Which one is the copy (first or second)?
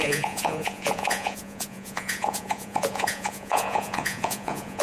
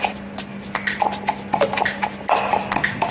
first